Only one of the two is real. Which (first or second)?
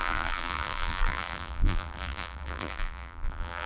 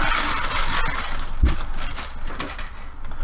second